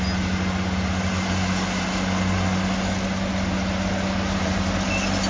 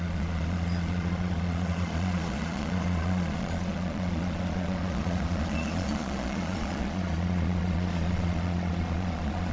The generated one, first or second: second